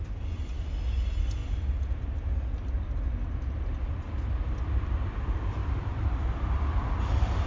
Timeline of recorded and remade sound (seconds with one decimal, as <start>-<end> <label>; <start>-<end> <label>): 0.0-5.6 recorded; 5.6-6.9 remade; 6.9-7.5 recorded